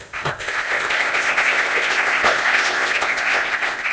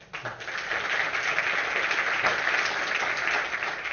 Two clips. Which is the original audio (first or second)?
second